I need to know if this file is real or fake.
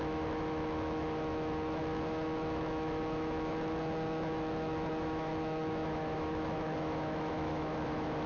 fake